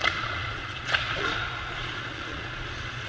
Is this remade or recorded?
remade